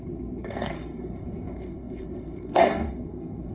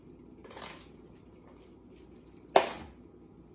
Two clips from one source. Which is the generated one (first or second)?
first